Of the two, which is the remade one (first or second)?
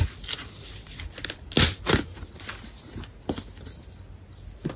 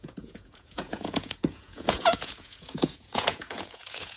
second